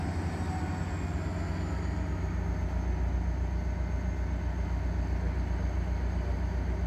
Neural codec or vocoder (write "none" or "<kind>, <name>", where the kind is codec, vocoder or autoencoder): none